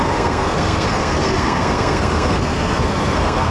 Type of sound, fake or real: fake